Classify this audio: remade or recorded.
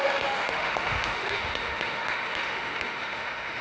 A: remade